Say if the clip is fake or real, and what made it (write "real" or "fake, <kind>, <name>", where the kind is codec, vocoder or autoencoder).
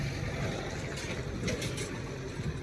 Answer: real